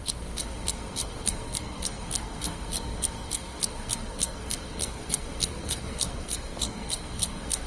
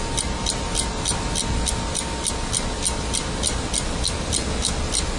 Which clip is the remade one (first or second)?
first